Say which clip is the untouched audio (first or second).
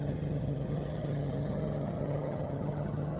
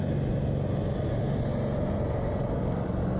second